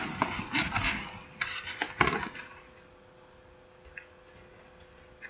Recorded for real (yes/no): yes